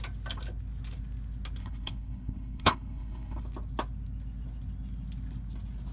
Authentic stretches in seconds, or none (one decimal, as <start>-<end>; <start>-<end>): 0.0-1.6; 3.4-5.9